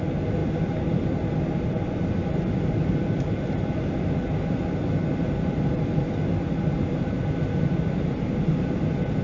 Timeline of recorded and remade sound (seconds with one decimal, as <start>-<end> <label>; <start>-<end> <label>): 0.0-0.4 recorded; 0.4-3.5 remade; 3.5-9.2 recorded